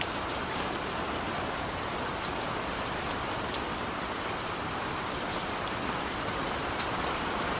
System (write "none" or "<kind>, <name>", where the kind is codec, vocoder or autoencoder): vocoder, BigVGAN v2